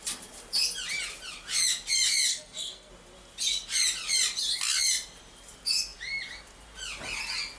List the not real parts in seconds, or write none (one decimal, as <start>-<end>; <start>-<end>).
2.3-2.9